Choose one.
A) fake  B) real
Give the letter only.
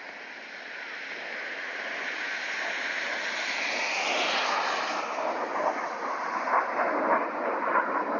B